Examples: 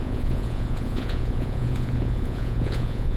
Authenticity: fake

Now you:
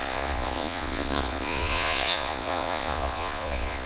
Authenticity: fake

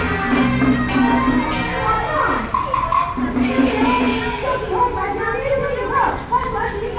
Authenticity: real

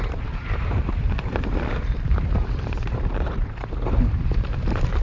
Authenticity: fake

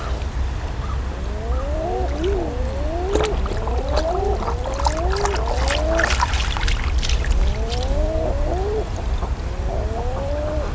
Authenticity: real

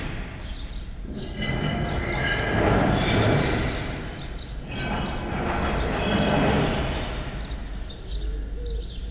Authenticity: real